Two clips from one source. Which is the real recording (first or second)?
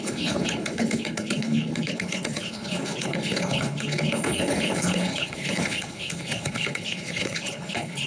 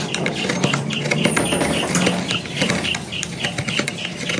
second